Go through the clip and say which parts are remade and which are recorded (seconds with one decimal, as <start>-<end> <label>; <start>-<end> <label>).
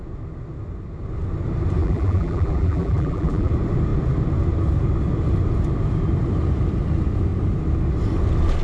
0.0-1.8 recorded; 1.8-3.5 remade; 3.5-8.6 recorded